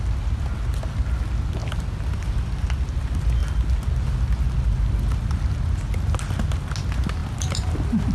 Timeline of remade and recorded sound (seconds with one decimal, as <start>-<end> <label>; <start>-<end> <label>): 0.0-8.1 recorded